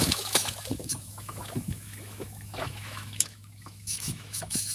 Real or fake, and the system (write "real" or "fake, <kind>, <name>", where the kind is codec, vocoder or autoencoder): fake, autoencoder, DAC-VAE